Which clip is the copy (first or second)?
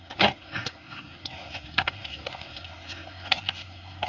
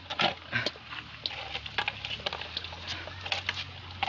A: first